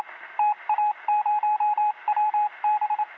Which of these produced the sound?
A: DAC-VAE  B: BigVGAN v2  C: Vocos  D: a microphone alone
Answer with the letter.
B